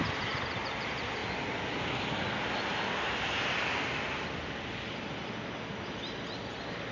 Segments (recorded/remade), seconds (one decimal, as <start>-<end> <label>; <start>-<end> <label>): 0.0-6.9 recorded